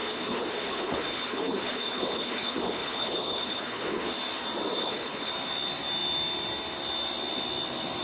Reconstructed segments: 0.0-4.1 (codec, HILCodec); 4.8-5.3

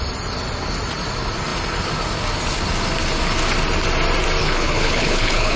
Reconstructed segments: 4.4-5.6 (codec, HILCodec)